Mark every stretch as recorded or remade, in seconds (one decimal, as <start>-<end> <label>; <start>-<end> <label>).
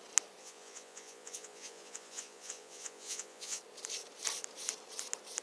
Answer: 0.0-0.4 recorded; 0.4-3.6 remade; 3.6-5.4 recorded